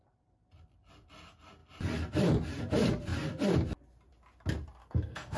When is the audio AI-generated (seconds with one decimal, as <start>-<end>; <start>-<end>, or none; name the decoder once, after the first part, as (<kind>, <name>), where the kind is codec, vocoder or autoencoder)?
4.8-5.4 (codec, SNAC)